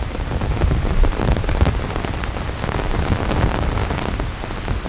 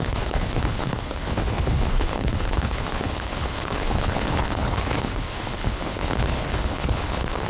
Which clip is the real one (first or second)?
first